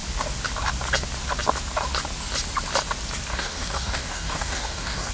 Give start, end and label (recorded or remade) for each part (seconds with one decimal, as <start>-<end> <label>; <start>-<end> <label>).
0.0-3.3 recorded; 3.3-5.1 remade